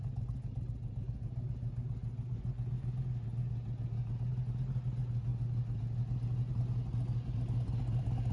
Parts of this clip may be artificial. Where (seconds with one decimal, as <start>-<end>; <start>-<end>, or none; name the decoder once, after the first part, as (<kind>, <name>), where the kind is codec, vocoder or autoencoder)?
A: none